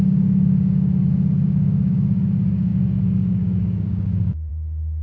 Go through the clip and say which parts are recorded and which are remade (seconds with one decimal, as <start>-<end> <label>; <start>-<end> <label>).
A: 0.0-5.0 remade